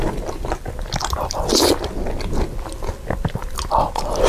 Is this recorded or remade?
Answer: recorded